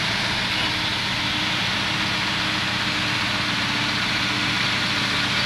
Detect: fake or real real